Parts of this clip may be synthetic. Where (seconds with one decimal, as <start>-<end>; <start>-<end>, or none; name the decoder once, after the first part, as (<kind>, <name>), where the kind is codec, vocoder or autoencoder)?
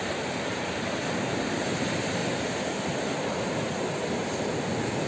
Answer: 0.0-2.2 (vocoder, BigVGAN v2)